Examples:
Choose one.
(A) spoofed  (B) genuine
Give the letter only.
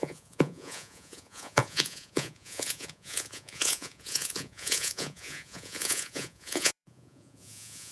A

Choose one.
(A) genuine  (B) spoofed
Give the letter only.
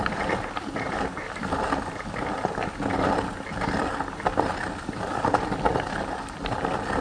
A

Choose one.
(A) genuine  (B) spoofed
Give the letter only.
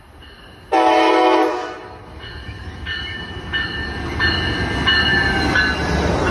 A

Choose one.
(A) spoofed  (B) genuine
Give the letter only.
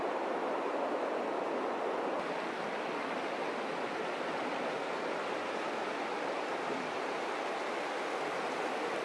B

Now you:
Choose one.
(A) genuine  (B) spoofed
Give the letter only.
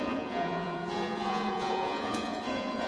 B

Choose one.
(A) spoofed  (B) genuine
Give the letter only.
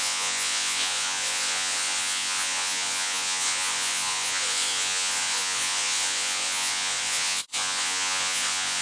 A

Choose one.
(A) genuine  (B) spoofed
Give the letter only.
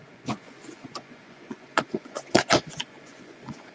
B